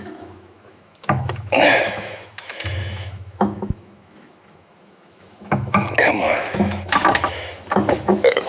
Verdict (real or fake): fake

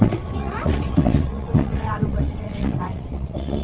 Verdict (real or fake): fake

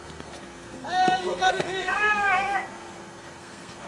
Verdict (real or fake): fake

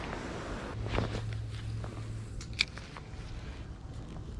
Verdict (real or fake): real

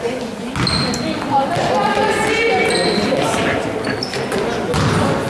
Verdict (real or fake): real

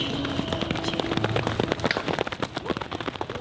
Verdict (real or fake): real